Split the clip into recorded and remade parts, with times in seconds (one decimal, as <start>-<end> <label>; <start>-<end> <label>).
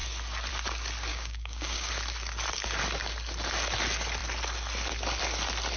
0.0-1.1 recorded; 1.1-1.9 remade; 1.9-5.8 recorded